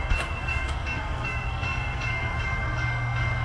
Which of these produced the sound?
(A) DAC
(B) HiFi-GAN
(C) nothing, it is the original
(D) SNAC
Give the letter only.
D